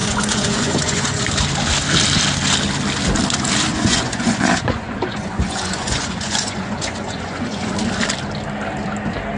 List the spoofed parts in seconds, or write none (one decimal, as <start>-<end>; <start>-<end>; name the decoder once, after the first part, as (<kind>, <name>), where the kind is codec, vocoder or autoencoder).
0.0-1.3 (vocoder, Vocos); 3.7-7.7